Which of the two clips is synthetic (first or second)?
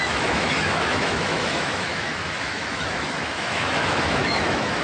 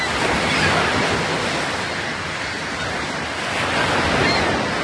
first